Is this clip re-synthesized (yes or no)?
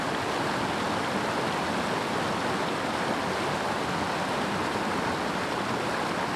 no